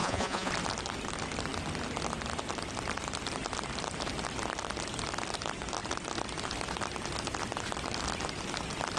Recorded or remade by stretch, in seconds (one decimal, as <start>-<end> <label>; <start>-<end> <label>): 0.0-0.5 remade; 0.5-9.0 recorded